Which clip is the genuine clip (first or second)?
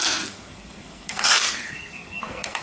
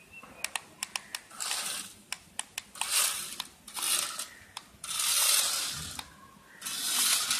second